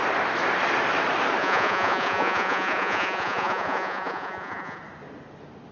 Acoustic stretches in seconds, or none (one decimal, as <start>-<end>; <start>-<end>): 0.0-1.4; 4.8-5.7